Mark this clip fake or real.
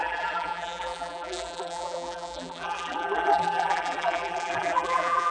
fake